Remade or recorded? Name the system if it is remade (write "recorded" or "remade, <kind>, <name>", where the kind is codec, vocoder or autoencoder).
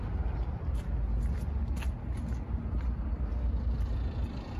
recorded